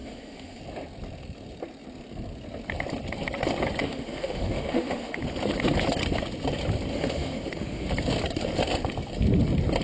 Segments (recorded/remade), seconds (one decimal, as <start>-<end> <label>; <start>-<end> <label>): 0.0-0.6 remade; 0.6-3.8 recorded; 3.8-5.2 remade; 5.2-6.9 recorded; 6.9-7.9 remade; 7.9-9.8 recorded